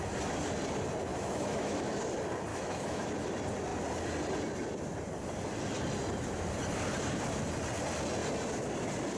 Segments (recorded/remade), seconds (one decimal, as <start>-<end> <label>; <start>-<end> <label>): 0.0-1.1 recorded; 1.1-1.9 remade; 1.9-2.5 recorded; 2.5-3.1 remade; 3.1-9.2 recorded